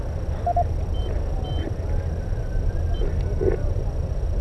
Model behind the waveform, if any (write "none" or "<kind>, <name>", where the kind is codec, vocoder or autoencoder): none